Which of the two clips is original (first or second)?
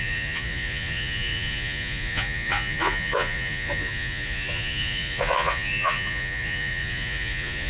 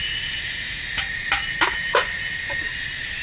second